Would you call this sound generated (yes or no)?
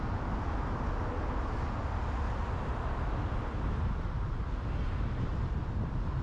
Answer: no